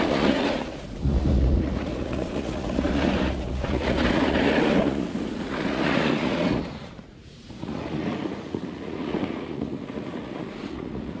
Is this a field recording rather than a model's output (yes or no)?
no